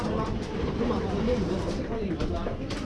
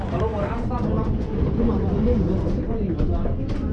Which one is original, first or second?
second